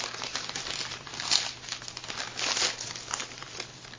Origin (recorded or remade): recorded